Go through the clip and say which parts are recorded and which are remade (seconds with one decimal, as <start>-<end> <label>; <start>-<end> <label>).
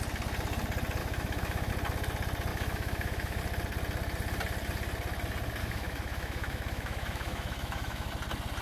0.0-1.0 recorded; 1.0-1.7 remade; 1.7-2.5 recorded; 2.5-3.4 remade; 3.4-5.6 recorded; 5.6-8.1 remade; 8.1-8.6 recorded